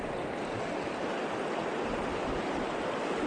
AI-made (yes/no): no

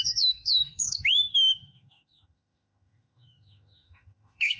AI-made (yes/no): yes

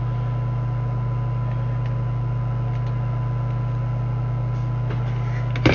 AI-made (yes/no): no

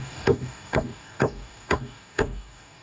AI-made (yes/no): yes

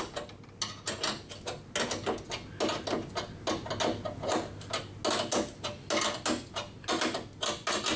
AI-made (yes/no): no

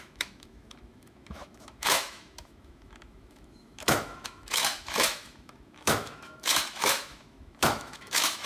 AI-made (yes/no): yes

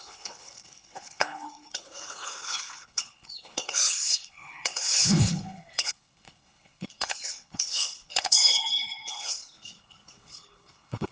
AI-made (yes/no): yes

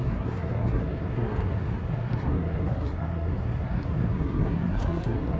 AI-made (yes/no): yes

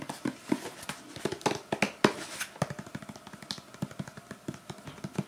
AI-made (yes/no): no